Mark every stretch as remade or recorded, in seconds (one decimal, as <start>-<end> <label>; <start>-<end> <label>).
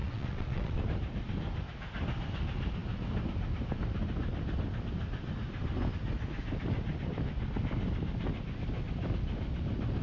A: 0.0-0.8 remade; 0.8-10.0 recorded